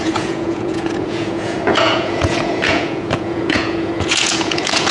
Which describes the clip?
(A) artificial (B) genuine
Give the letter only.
A